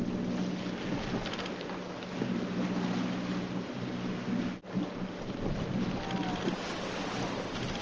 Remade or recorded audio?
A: recorded